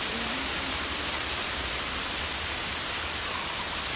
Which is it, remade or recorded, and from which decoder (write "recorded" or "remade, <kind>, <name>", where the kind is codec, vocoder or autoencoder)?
remade, vocoder, BigVGAN v2